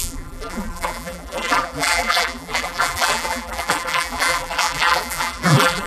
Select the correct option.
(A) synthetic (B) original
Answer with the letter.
A